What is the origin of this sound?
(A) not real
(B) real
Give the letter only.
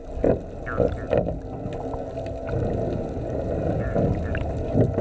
B